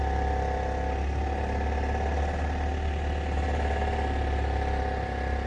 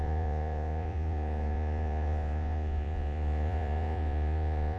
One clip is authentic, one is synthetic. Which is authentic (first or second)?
first